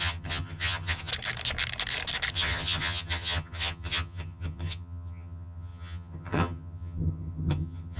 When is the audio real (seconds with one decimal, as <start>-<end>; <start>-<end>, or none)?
1.1-2.3